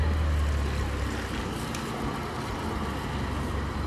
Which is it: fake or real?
real